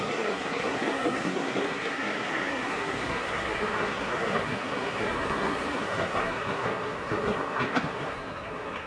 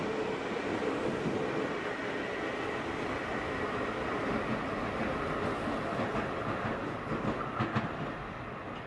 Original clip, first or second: second